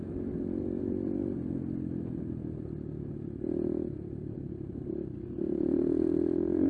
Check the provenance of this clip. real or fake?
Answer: real